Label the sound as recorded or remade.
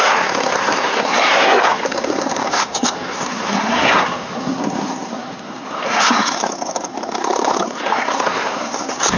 remade